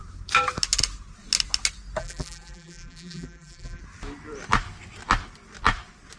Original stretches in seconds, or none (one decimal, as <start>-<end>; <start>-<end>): 0.0-2.0; 3.8-6.2